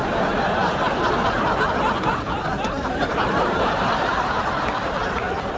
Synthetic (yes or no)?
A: no